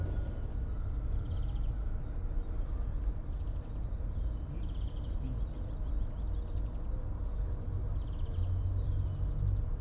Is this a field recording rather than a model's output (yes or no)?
yes